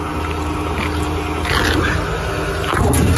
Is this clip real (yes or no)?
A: yes